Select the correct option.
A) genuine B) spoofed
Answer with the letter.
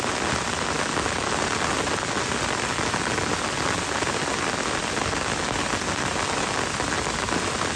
A